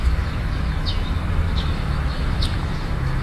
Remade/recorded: remade